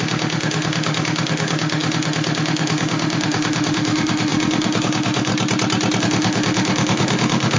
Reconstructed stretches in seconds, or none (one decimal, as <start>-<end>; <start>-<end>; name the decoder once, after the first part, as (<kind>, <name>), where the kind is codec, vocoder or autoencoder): 0.0-5.3 (autoencoder, DAC-VAE); 6.0-7.6